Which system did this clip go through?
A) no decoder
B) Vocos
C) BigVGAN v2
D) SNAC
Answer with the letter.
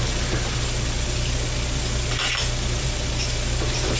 A